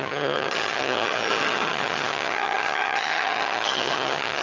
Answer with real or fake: fake